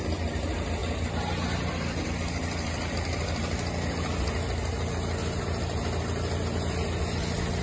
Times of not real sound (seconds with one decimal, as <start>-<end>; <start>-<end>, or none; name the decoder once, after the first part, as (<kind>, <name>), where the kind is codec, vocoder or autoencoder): none